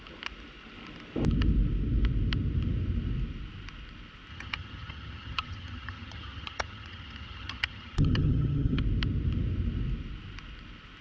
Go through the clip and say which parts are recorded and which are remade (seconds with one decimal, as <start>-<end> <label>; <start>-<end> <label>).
0.0-4.3 recorded; 4.3-8.8 remade; 8.8-11.0 recorded